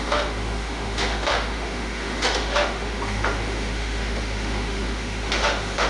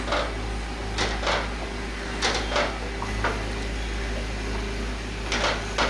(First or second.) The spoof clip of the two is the first